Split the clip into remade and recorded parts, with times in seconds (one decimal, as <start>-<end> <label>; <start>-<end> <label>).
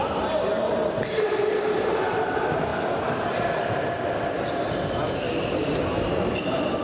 0.0-2.7 remade; 2.7-5.9 recorded; 5.9-6.8 remade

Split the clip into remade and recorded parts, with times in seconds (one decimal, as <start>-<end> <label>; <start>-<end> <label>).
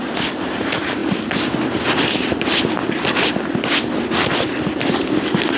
0.0-2.8 remade; 2.8-3.8 recorded; 3.8-5.6 remade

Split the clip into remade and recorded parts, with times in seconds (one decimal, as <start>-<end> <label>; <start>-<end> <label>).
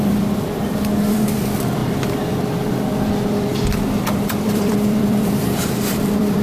0.0-6.4 remade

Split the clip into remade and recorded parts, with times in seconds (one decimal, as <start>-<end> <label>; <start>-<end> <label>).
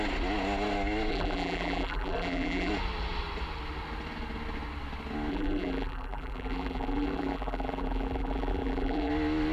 0.0-1.1 recorded; 1.1-2.7 remade; 2.7-5.3 recorded; 5.3-9.1 remade; 9.1-9.5 recorded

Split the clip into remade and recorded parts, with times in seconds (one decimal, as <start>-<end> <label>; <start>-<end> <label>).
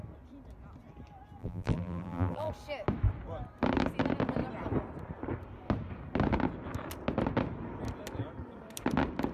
0.0-1.4 recorded; 1.4-2.5 remade; 2.5-9.3 recorded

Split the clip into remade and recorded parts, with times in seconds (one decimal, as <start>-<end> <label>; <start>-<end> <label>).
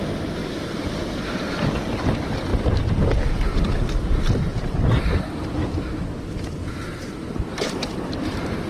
0.0-0.4 recorded; 0.4-1.6 remade; 1.6-6.6 recorded; 6.6-8.7 remade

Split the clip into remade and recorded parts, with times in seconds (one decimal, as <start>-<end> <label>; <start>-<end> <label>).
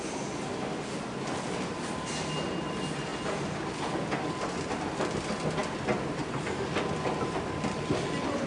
0.0-8.5 recorded